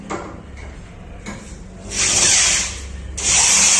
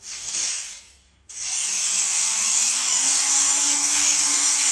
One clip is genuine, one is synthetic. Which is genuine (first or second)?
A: first